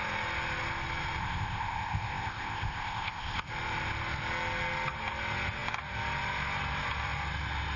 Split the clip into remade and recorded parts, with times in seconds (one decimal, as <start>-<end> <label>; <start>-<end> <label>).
0.0-1.2 recorded; 1.2-3.5 remade; 3.5-7.8 recorded